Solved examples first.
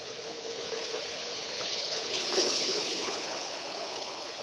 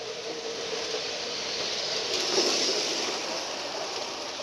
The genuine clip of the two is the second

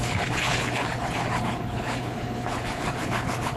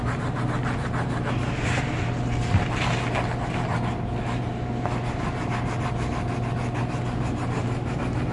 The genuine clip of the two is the second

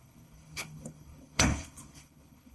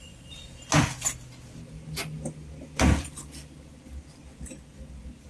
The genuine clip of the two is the second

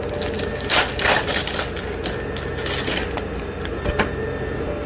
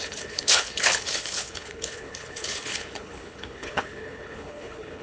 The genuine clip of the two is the first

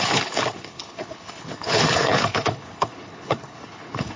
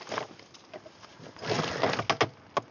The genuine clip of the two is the second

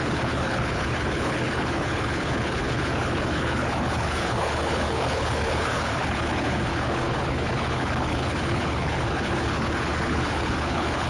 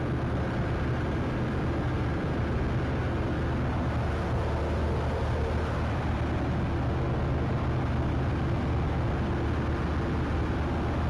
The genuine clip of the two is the second